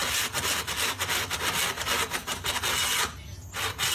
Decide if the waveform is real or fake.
real